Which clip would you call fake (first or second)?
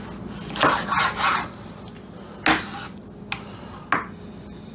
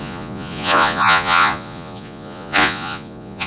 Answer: second